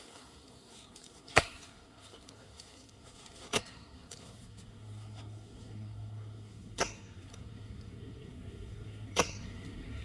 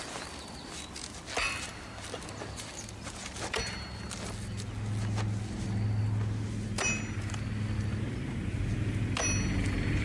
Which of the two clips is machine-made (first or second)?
first